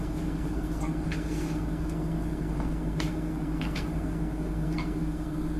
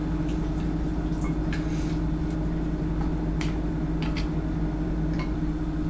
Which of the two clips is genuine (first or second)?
second